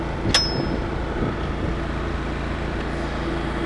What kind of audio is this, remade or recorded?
recorded